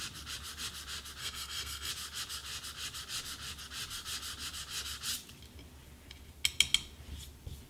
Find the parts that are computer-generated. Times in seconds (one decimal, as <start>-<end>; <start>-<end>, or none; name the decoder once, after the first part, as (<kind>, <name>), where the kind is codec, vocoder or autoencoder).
1.2-1.9 (codec, SNAC)